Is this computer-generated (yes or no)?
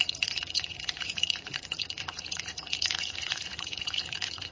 yes